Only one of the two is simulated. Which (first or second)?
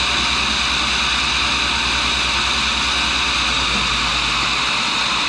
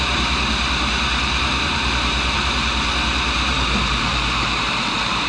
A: second